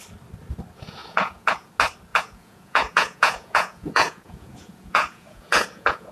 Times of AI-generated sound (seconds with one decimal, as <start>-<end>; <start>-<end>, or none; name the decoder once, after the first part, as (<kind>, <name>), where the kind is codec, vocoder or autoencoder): 1.0-1.7 (vocoder, Vocos); 2.1-6.1